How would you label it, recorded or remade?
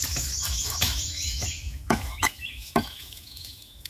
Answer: remade